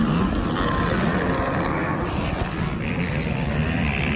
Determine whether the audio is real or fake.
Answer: real